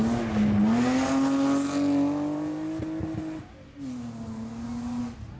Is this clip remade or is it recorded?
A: recorded